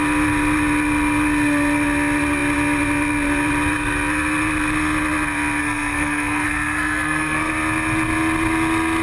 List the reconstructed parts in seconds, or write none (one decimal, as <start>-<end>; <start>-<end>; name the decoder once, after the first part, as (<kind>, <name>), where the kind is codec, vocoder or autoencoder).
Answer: 5.6-7.5 (codec, SNAC)